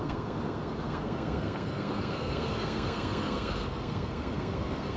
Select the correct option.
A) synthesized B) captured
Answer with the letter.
A